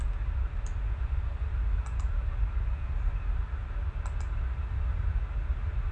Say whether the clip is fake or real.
real